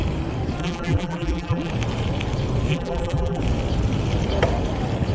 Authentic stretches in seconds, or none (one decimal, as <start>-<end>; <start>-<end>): 0.0-0.6; 1.7-2.7; 3.4-5.1